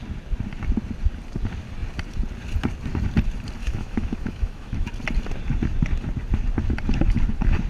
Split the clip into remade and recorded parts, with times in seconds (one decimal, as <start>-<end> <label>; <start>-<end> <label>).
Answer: 0.0-3.6 recorded; 3.6-4.9 remade; 4.9-7.7 recorded